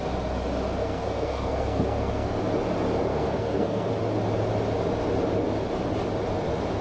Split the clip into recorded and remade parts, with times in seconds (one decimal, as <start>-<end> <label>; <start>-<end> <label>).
0.0-0.8 recorded; 0.8-2.4 remade; 2.4-3.1 recorded; 3.1-3.9 remade; 3.9-6.8 recorded